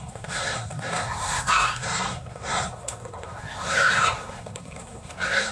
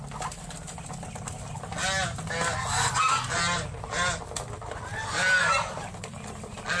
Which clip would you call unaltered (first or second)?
second